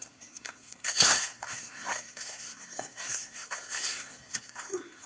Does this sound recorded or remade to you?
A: remade